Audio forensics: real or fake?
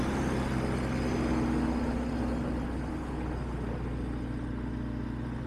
real